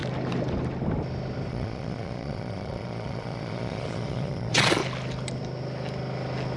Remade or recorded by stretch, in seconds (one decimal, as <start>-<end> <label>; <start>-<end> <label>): 0.0-1.5 recorded; 1.5-4.8 remade; 4.8-6.6 recorded

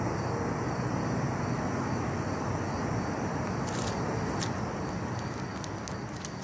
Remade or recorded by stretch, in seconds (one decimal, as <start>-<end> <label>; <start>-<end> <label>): 0.0-6.4 recorded

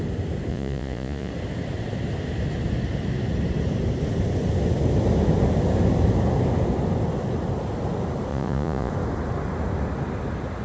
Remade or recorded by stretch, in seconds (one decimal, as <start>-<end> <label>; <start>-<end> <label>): 0.0-0.5 recorded; 0.5-1.3 remade; 1.3-8.3 recorded; 8.3-8.9 remade; 8.9-10.6 recorded

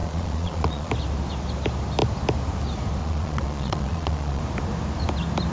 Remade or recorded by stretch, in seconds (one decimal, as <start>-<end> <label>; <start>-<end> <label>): 0.0-0.9 remade; 0.9-3.0 recorded; 3.0-4.4 remade; 4.4-5.5 recorded